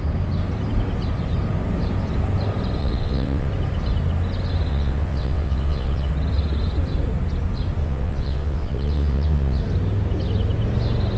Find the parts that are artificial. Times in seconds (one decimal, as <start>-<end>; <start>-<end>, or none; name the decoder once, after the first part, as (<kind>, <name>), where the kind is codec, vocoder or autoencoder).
2.8-3.5 (vocoder, WaveNeXt); 4.7-6.1; 7.8-9.6